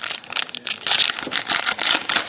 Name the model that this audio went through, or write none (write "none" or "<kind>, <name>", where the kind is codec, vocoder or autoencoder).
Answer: none